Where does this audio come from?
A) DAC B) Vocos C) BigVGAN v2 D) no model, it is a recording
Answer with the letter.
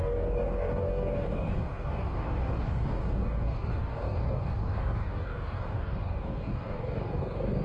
A